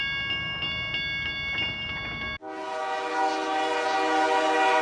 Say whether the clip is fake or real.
real